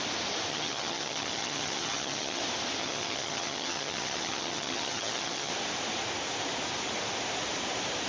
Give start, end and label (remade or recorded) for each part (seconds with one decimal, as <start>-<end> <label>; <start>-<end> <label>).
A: 0.0-0.5 recorded; 0.5-2.4 remade; 2.4-2.8 recorded; 2.8-5.5 remade; 5.5-8.1 recorded